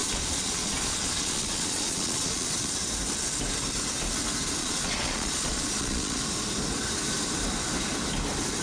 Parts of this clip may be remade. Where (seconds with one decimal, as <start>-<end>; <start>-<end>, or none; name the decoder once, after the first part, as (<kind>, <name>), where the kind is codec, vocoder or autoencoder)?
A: 0.0-2.7 (vocoder, Vocos); 4.6-6.2